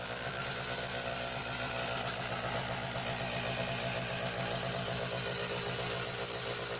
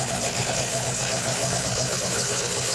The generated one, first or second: second